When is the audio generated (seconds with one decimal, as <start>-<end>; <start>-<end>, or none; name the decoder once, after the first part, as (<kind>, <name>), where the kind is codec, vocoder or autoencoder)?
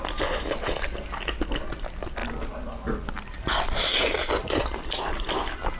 2.2-5.8 (vocoder, BigVGAN v2)